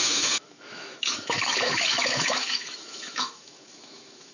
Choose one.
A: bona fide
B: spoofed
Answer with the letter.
B